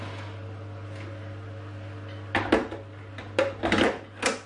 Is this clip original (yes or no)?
yes